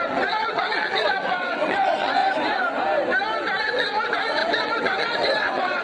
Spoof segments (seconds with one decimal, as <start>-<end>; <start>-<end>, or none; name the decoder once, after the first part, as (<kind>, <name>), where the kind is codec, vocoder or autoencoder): 0.0-2.2 (vocoder, WaveNeXt); 3.6-5.8